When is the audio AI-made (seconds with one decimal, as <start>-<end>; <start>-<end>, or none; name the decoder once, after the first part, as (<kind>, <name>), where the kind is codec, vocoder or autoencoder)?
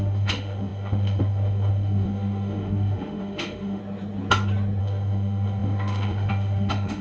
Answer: 0.0-3.8 (autoencoder, DAC-VAE); 4.8-7.0